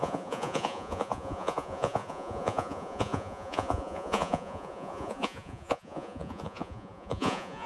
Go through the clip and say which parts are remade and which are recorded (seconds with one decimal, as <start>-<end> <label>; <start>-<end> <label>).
0.0-7.7 remade